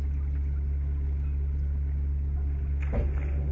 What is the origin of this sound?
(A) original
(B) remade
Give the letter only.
A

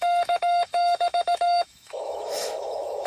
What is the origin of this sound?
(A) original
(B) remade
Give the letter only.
B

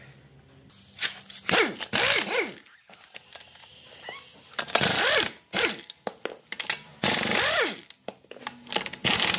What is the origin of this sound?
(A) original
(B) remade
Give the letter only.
A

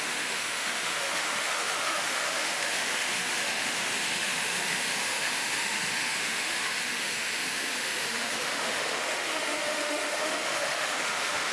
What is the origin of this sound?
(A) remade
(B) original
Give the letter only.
A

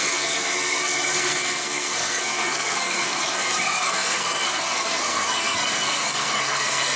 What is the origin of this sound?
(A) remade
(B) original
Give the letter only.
A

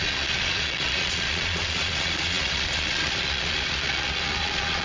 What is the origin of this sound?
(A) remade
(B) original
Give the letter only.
A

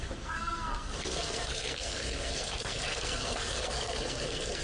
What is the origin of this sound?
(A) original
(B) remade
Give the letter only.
B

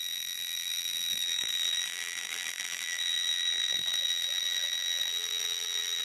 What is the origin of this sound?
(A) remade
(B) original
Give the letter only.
A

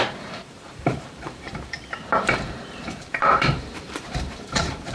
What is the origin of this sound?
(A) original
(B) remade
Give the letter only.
B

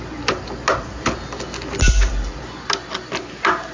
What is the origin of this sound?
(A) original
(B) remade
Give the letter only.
A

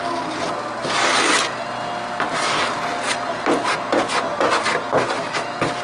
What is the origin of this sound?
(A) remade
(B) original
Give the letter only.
B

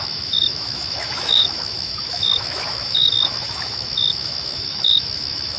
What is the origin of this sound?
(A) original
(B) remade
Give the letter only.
B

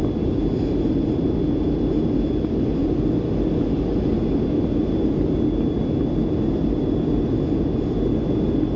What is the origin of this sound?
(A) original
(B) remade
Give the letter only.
A